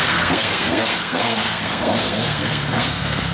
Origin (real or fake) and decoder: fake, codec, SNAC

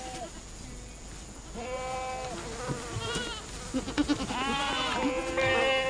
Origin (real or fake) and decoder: real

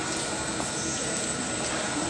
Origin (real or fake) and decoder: fake, vocoder, BigVGAN v2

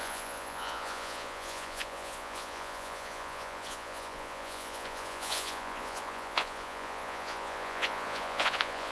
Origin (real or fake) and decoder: fake, vocoder, Vocos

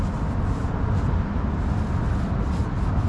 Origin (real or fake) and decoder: real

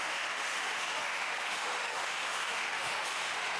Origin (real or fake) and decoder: fake, autoencoder, DAC-VAE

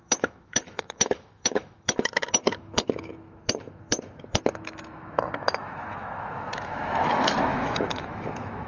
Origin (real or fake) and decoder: fake, autoencoder, DAC-VAE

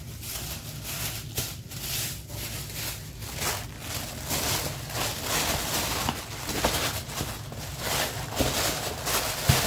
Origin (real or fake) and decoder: real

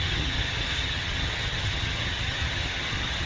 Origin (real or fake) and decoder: fake, vocoder, HiFi-GAN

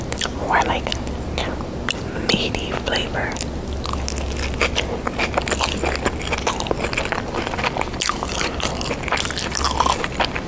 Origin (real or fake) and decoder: real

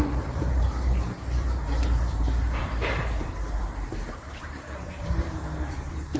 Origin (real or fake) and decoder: fake, vocoder, BigVGAN v2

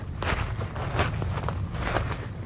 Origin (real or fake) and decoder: real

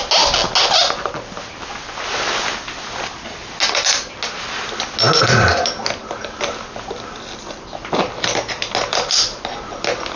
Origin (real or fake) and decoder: real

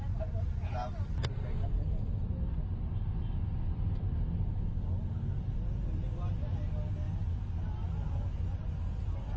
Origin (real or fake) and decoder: real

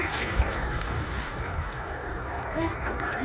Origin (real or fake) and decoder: fake, codec, DAC